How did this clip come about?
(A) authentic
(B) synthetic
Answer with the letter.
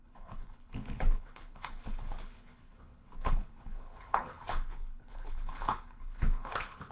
B